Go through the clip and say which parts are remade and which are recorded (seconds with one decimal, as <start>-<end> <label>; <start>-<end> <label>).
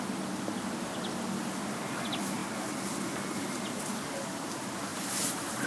0.0-4.9 recorded; 4.9-5.7 remade